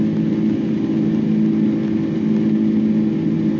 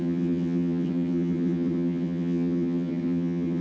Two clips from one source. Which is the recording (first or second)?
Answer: first